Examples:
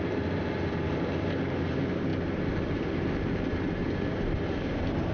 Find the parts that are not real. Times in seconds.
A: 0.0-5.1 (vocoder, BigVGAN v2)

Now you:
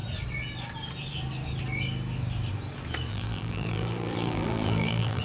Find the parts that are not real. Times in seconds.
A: 3.1-5.2 (vocoder, BigVGAN v2)

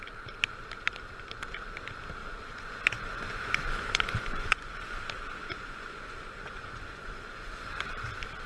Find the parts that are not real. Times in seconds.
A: 2.2-5.0 (vocoder, Vocos); 5.4-8.1